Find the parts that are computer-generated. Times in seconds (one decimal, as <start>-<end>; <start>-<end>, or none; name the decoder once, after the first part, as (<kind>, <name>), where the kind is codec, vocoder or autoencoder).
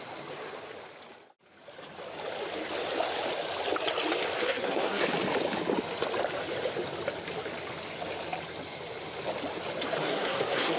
4.4-5.0 (codec, SNAC); 10.0-10.8